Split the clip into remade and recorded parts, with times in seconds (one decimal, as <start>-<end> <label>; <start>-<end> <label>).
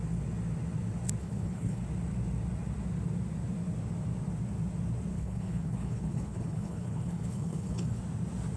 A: 0.0-1.2 recorded; 1.2-1.8 remade; 1.8-5.1 recorded; 5.1-8.0 remade; 8.0-8.6 recorded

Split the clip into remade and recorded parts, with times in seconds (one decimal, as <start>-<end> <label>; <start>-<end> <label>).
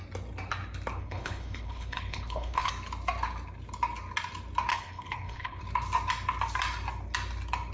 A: 0.0-1.0 recorded; 1.0-2.7 remade; 2.7-4.7 recorded; 4.7-5.6 remade; 5.6-7.7 recorded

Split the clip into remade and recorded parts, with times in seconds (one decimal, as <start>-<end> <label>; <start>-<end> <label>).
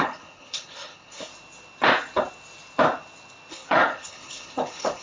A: 0.0-1.3 remade; 1.3-3.5 recorded; 3.5-5.0 remade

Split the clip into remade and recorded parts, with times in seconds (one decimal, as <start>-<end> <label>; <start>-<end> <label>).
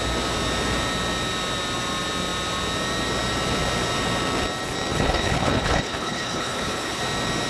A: 0.0-4.9 recorded; 4.9-7.0 remade; 7.0-7.5 recorded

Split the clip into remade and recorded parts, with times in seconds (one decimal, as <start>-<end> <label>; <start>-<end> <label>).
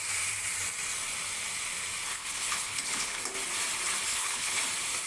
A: 0.0-2.1 recorded; 2.1-3.2 remade; 3.2-4.1 recorded; 4.1-4.6 remade; 4.6-5.1 recorded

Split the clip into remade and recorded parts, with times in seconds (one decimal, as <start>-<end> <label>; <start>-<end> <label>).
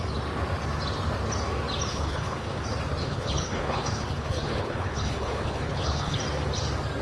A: 0.0-1.9 recorded; 1.9-2.6 remade; 2.6-3.0 recorded; 3.0-6.2 remade; 6.2-7.0 recorded